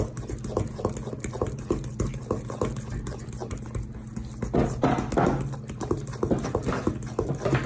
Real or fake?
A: real